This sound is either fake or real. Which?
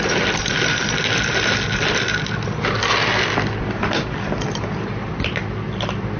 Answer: real